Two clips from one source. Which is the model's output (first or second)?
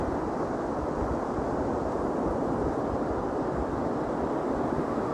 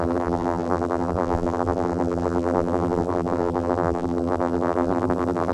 second